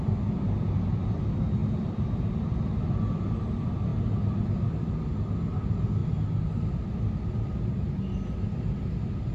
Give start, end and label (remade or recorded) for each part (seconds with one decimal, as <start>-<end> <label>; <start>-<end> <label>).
0.0-9.3 recorded